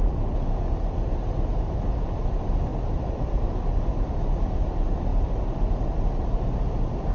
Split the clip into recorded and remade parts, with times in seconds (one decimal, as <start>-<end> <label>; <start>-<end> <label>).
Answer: 0.0-7.1 recorded